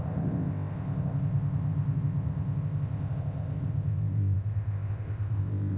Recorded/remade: remade